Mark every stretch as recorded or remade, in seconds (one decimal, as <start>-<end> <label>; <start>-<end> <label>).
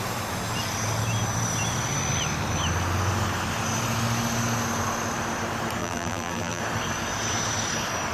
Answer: 0.0-5.8 recorded; 5.8-6.6 remade; 6.6-8.1 recorded